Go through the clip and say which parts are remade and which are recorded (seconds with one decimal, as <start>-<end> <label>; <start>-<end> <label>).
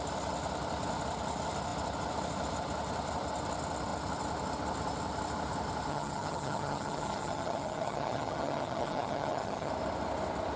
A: 0.0-5.9 recorded; 5.9-9.7 remade; 9.7-10.6 recorded